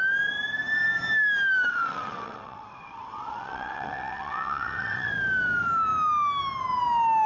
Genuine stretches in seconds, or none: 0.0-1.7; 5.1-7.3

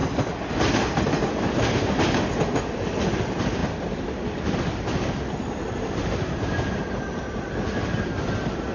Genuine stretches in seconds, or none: 0.0-8.7

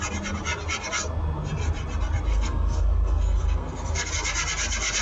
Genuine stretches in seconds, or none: 0.0-2.3; 4.1-5.0

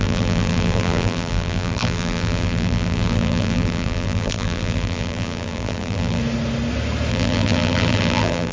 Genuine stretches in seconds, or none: 6.2-7.1

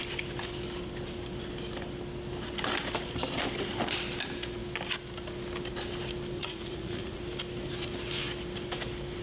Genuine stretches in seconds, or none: 0.0-6.4; 7.2-9.2

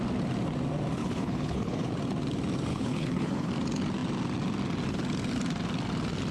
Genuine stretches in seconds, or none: 0.0-1.0; 1.9-2.7; 3.5-6.3